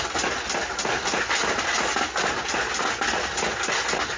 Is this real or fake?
real